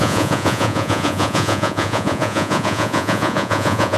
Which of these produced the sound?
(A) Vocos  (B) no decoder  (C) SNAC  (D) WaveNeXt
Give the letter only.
A